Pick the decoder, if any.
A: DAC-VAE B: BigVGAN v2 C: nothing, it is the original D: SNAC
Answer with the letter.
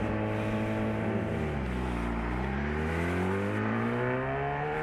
C